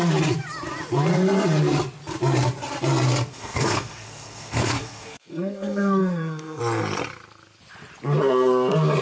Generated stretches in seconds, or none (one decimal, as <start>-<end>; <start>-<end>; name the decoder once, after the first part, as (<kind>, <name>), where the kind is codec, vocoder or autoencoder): 3.3-6.6 (codec, SNAC)